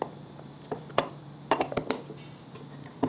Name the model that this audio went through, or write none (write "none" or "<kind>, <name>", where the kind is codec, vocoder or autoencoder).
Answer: none